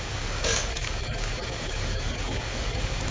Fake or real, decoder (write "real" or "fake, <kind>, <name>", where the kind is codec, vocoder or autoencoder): fake, codec, DAC